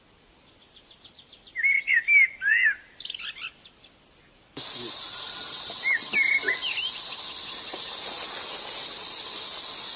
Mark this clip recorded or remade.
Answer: recorded